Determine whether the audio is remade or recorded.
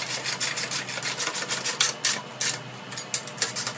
recorded